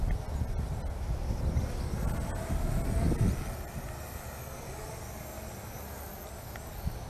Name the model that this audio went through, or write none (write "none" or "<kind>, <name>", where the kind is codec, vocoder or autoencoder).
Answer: none